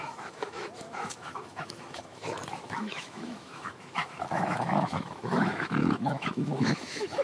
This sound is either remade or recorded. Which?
remade